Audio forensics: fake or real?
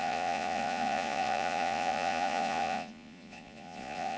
fake